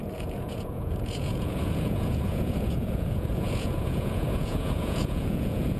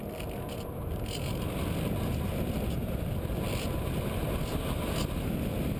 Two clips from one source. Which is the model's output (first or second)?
first